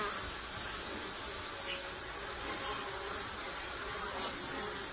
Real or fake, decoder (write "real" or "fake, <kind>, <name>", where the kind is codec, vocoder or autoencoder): real